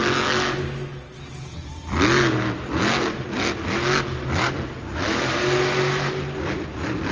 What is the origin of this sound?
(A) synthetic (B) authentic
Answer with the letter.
B